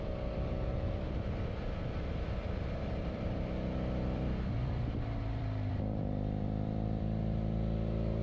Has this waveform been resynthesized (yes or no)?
yes